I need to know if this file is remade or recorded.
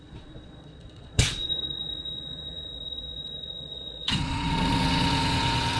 remade